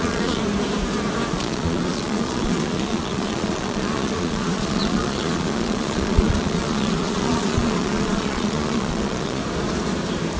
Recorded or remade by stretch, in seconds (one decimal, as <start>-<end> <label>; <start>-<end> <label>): 0.0-0.4 remade; 0.4-1.3 recorded; 1.3-9.4 remade; 9.4-10.4 recorded